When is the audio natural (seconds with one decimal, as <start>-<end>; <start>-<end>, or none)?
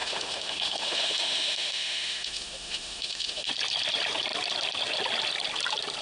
3.5-6.0